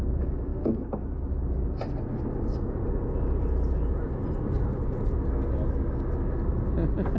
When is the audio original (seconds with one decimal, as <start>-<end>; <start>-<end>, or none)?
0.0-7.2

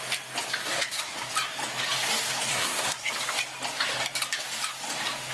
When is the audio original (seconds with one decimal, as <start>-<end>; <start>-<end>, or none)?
0.0-0.6; 1.3-2.5; 3.1-5.3

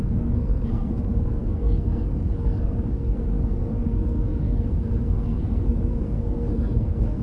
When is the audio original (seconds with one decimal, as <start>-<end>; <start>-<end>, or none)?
none